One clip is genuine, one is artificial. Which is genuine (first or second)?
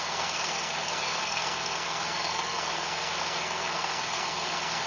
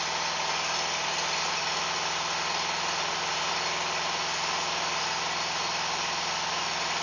second